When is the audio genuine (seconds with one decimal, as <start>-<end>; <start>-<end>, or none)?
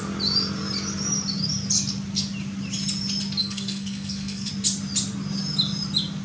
0.0-3.4; 4.5-6.2